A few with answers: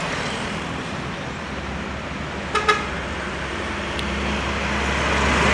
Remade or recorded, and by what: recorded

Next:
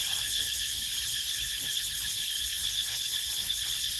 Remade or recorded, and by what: remade, codec, HILCodec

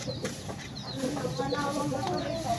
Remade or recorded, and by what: recorded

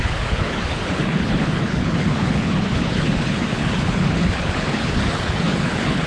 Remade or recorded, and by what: remade, codec, HILCodec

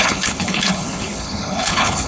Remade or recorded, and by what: remade, codec, HILCodec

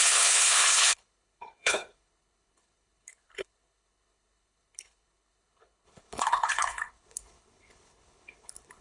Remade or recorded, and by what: remade, codec, HILCodec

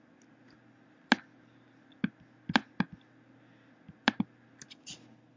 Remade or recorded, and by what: recorded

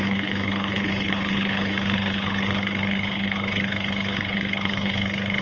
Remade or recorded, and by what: remade, codec, HILCodec